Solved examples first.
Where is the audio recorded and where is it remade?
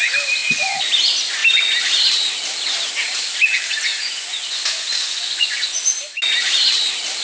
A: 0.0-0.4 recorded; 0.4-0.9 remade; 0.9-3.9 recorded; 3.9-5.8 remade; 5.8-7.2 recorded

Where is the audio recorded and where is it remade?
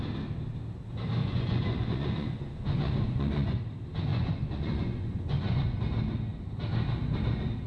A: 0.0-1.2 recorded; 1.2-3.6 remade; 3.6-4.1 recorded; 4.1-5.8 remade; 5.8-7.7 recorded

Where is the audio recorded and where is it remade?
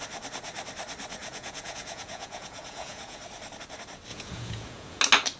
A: 0.0-1.2 recorded; 1.2-3.2 remade; 3.2-4.1 recorded; 4.1-5.0 remade; 5.0-5.4 recorded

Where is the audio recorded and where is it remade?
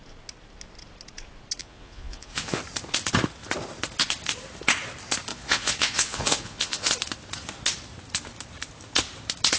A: 0.0-1.6 recorded; 1.6-2.6 remade; 2.6-5.3 recorded; 5.3-6.9 remade; 6.9-9.6 recorded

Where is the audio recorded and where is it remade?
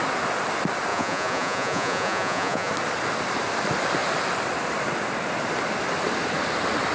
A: 0.0-0.9 recorded; 0.9-2.7 remade; 2.7-6.9 recorded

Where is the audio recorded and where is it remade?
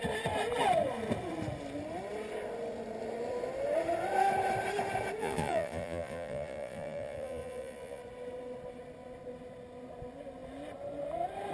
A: 0.0-5.2 recorded; 5.2-8.0 remade; 8.0-11.5 recorded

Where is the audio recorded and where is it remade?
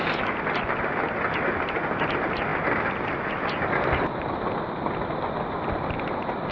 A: 0.0-6.5 recorded